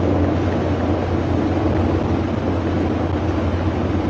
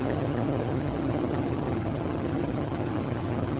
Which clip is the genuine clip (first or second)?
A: first